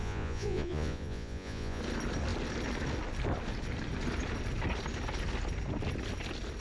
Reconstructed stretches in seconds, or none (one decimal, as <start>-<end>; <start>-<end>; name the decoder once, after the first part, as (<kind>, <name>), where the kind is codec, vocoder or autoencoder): 0.0-1.8 (vocoder, Vocos)